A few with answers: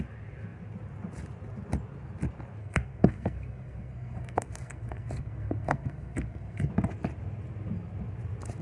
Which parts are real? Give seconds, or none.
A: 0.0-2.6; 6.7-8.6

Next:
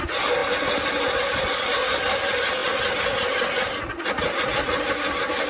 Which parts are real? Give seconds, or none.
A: 0.0-5.5

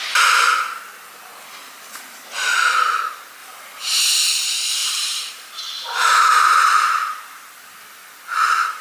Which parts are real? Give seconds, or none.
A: 0.0-4.8; 7.4-8.8

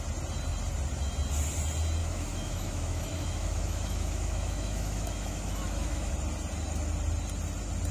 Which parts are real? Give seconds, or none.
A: 0.0-2.0; 6.1-7.9

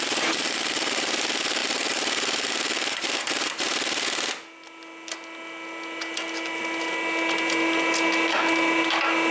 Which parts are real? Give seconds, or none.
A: 0.0-9.3

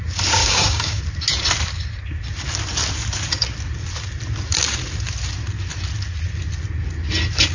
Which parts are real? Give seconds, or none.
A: 0.0-0.4; 1.0-7.5

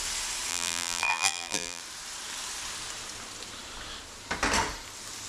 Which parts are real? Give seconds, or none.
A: 0.0-0.5; 1.8-5.3